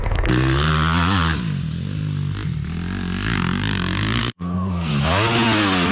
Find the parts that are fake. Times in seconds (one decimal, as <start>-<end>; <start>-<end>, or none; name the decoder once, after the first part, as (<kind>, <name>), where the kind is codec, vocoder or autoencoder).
0.0-0.7 (codec, SNAC); 4.2-4.9